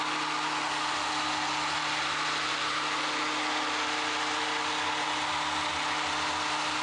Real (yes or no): yes